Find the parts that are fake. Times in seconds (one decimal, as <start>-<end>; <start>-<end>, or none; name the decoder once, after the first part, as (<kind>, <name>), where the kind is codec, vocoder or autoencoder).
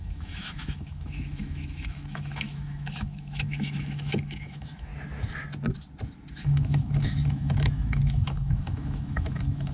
0.0-4.9 (autoencoder, DAC-VAE); 6.3-9.7